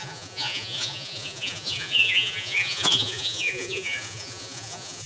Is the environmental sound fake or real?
fake